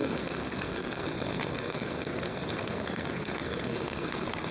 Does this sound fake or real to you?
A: fake